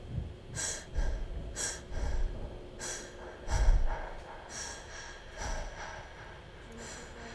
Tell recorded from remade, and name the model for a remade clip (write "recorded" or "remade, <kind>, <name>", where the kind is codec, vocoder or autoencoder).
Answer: recorded